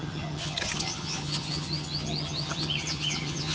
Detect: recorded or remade remade